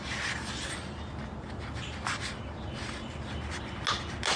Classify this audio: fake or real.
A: real